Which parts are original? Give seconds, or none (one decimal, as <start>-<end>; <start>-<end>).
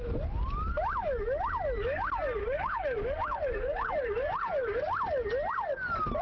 0.0-2.4; 3.9-6.2